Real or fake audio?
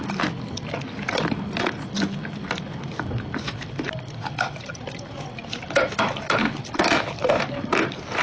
real